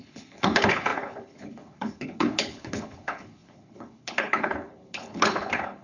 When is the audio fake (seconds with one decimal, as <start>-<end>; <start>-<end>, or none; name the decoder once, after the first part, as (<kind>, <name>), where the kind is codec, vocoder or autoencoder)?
0.0-5.8 (codec, HILCodec)